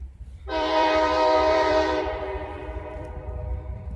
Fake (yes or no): yes